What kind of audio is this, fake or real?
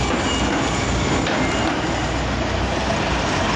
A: real